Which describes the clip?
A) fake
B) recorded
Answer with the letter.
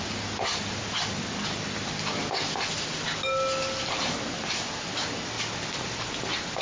B